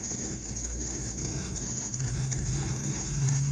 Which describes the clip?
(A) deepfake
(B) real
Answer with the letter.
A